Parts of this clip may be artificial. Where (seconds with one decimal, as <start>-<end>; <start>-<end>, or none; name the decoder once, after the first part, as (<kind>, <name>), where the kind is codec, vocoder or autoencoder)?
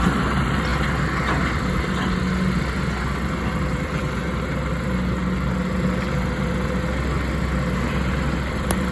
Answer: 0.0-0.7 (vocoder, BigVGAN v2); 3.3-4.2; 8.5-8.9